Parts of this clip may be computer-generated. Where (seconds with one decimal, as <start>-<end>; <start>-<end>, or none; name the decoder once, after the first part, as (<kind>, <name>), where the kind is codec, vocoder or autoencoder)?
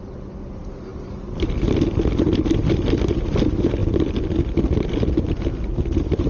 none